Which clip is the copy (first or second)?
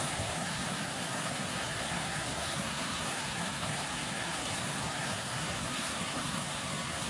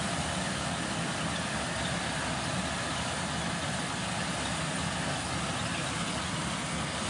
first